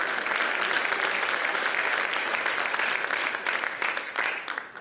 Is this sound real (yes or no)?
yes